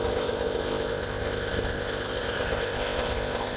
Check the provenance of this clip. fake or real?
fake